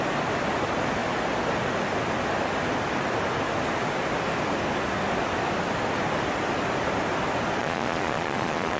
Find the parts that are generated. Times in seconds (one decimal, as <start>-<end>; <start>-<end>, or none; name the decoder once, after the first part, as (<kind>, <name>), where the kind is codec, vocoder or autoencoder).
7.6-8.8 (vocoder, Vocos)